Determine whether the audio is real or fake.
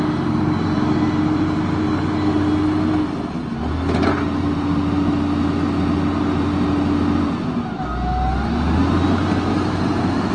real